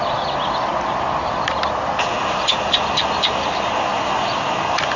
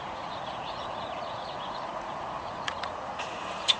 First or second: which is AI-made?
second